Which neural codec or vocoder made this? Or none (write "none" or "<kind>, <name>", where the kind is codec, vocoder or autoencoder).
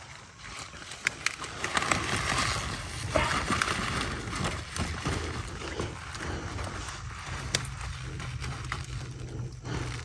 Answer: none